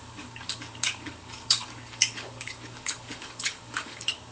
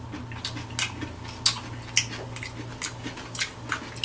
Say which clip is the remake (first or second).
first